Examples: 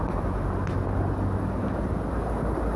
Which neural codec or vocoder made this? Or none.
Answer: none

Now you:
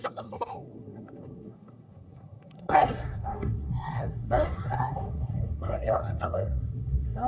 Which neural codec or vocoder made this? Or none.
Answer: codec, SNAC